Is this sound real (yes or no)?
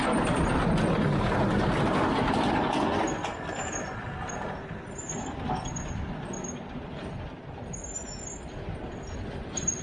yes